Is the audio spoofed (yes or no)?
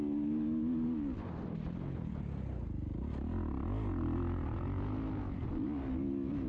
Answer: no